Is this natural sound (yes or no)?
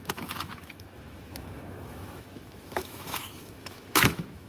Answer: no